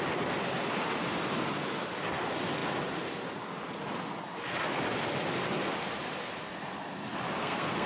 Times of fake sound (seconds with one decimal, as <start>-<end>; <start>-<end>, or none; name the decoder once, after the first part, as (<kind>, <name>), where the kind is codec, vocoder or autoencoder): 7.4-7.9 (codec, SNAC)